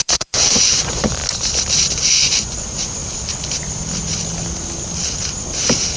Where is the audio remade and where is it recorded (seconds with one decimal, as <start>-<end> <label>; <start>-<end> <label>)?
0.0-1.2 remade; 1.2-2.1 recorded; 2.1-3.0 remade; 3.0-6.0 recorded